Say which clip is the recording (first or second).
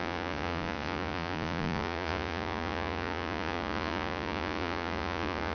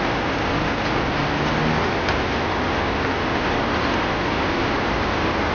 second